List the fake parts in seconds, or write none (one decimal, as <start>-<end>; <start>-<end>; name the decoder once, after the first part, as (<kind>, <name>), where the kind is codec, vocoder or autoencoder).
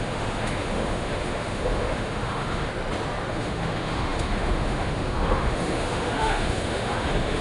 0.0-2.7 (autoencoder, DAC-VAE); 3.3-7.4